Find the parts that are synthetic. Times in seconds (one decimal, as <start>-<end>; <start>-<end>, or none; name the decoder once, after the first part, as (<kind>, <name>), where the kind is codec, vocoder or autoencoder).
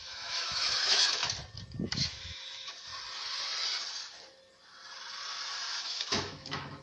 0.0-1.2 (autoencoder, DAC-VAE); 1.8-2.9; 5.8-6.8